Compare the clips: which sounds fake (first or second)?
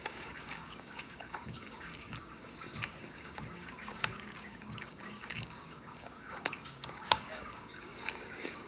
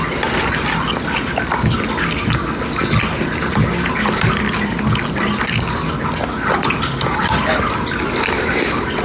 first